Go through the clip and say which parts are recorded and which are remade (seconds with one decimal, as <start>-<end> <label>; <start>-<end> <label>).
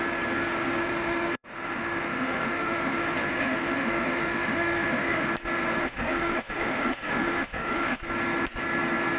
0.0-0.8 recorded; 0.8-5.3 remade; 5.3-5.8 recorded; 5.8-8.0 remade; 8.0-9.2 recorded